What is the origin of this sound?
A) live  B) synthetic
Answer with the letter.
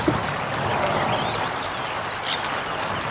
A